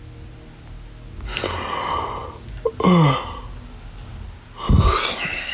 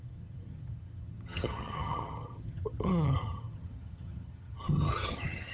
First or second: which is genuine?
first